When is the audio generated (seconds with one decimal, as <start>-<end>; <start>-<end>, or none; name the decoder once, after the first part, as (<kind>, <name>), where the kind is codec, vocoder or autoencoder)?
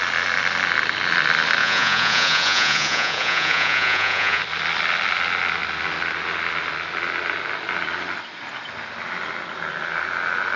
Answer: 1.6-4.4 (vocoder, Vocos)